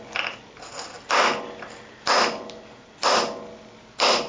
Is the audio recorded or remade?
recorded